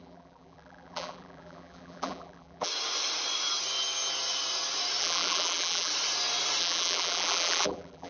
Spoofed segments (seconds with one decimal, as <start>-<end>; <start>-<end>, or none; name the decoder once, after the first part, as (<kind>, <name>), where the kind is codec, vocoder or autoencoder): 0.0-2.7 (vocoder, BigVGAN v2); 5.0-5.9; 6.6-8.1